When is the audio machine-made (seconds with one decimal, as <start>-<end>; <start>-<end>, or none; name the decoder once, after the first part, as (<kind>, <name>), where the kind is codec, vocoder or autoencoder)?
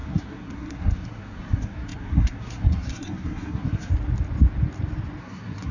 0.0-3.9 (codec, SNAC); 5.2-5.7